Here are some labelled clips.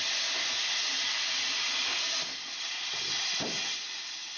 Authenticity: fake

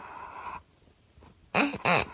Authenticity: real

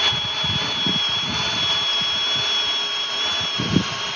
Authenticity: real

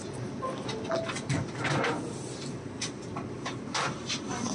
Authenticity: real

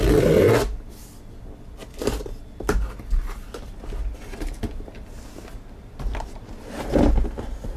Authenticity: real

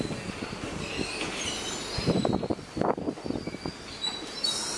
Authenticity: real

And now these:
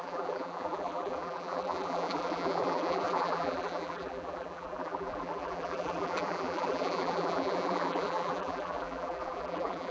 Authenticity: fake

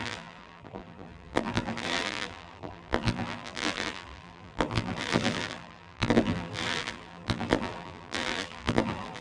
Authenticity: fake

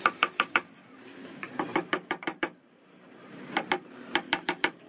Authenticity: fake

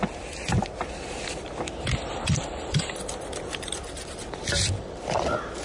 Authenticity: fake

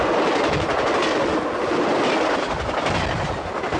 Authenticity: real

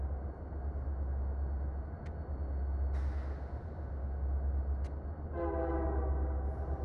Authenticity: real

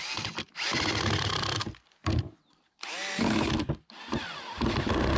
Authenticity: fake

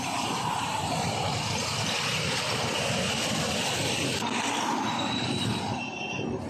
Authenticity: fake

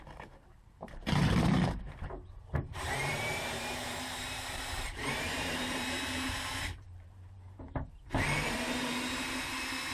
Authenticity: fake